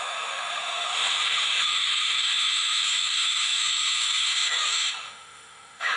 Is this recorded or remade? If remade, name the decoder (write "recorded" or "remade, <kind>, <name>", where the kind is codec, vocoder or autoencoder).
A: remade, autoencoder, DAC-VAE